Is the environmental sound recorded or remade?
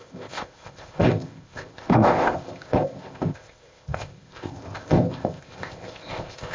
remade